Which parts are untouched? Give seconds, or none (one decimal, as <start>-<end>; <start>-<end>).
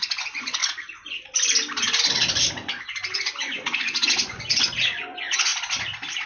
0.6-2.5; 5.5-6.3